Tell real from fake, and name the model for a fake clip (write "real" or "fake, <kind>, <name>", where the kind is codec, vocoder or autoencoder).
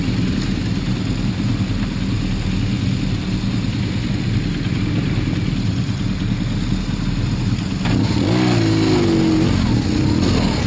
real